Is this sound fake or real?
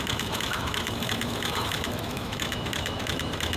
fake